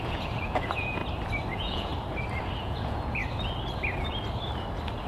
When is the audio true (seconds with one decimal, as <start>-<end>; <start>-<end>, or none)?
1.0-1.5; 1.9-2.6; 3.2-5.1